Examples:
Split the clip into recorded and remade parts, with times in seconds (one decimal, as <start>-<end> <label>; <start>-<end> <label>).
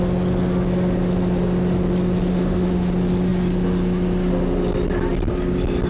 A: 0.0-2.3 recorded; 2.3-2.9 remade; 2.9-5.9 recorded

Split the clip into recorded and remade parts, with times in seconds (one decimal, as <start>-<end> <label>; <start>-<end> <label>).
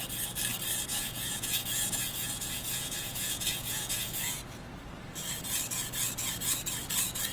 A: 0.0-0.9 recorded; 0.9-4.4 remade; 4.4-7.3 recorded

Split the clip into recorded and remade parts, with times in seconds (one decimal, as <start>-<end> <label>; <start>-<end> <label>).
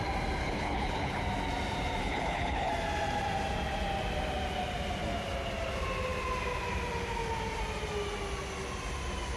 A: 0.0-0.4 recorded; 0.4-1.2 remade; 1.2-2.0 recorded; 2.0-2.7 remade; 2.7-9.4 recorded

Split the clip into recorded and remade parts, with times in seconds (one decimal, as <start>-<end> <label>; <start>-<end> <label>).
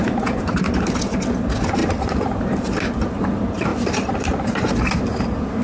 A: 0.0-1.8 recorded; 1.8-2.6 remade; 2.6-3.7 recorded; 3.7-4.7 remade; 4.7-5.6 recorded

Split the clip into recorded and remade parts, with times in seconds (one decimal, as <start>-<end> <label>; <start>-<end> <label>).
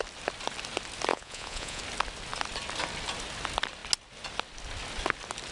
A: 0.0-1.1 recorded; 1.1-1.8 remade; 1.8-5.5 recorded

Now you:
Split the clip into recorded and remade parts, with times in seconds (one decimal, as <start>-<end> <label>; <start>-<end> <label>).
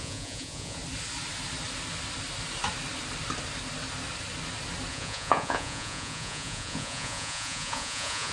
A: 0.0-0.8 remade; 0.8-4.9 recorded; 4.9-8.3 remade